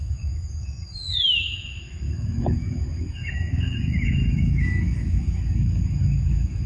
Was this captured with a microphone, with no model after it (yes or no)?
no